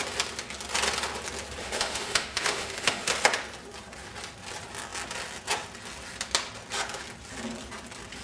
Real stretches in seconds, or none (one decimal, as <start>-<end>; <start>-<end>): 0.0-1.6; 3.1-8.2